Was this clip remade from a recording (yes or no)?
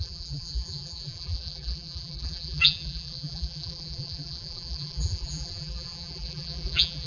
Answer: yes